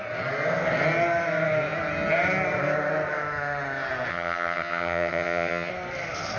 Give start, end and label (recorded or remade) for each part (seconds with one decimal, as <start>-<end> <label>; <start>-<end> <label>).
0.0-4.1 recorded; 4.1-5.7 remade; 5.7-6.4 recorded